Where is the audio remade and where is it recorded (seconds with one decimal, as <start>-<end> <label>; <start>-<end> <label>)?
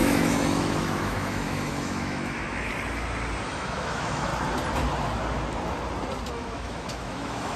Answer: 0.0-2.7 remade; 2.7-3.5 recorded; 3.5-4.3 remade; 4.3-6.3 recorded; 6.3-7.6 remade